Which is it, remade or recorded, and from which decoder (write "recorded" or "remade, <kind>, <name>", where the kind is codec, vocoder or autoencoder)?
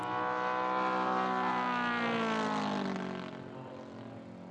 recorded